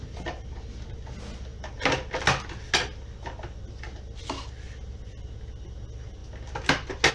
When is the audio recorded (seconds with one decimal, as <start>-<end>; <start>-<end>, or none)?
0.0-7.1